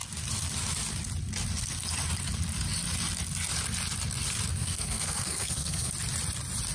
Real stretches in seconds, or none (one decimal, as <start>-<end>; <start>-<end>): 0.0-4.5; 5.9-6.7